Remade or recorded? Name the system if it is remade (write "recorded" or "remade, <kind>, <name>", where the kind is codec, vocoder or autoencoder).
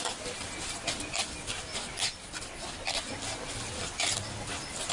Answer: recorded